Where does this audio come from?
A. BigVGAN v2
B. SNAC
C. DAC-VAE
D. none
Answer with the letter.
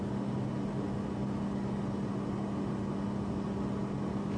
D